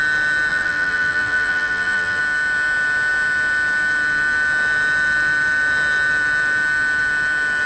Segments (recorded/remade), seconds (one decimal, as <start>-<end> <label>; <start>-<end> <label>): 0.0-0.5 recorded; 0.5-2.2 remade; 2.2-7.7 recorded